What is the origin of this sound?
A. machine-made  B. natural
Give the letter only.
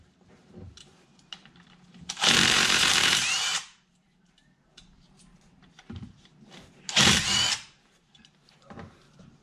A